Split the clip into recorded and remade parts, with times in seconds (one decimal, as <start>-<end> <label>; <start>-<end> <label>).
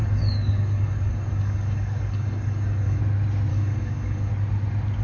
0.0-3.0 remade; 3.0-3.5 recorded; 3.5-4.3 remade; 4.3-5.0 recorded